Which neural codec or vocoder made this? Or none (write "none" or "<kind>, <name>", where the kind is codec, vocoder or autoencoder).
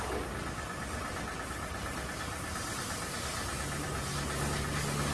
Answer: none